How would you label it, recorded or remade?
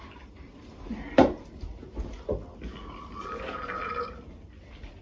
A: recorded